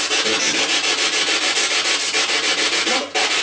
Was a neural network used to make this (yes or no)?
no